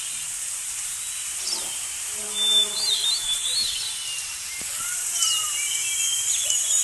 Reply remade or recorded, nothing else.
remade